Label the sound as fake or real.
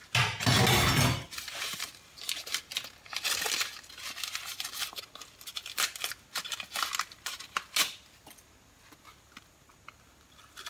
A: real